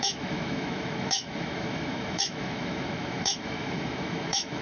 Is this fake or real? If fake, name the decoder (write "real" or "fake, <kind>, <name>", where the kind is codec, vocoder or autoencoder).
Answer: fake, autoencoder, DAC-VAE